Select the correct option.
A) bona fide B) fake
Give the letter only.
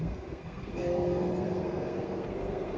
B